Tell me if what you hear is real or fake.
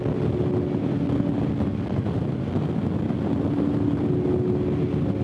real